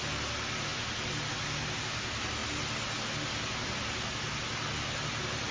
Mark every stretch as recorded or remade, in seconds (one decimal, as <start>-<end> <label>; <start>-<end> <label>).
0.0-5.5 recorded